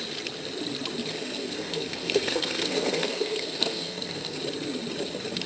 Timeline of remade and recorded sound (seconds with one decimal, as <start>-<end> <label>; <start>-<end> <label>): 0.0-1.1 recorded; 1.1-4.4 remade; 4.4-5.5 recorded